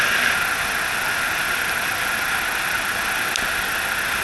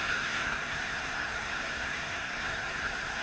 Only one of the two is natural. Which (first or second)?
first